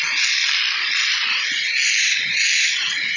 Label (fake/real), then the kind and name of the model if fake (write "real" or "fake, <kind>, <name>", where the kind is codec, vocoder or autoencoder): real